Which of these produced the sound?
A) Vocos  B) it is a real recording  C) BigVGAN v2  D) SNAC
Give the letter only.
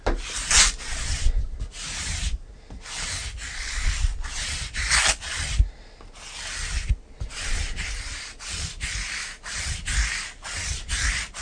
B